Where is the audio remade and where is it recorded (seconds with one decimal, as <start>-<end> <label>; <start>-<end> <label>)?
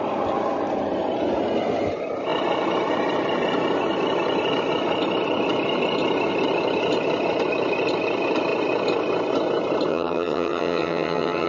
0.0-9.9 recorded; 9.9-11.5 remade